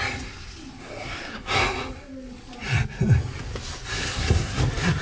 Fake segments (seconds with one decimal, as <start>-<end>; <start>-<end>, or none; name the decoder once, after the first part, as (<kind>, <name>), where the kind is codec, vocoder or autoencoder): 0.8-1.5 (codec, SNAC); 4.0-4.6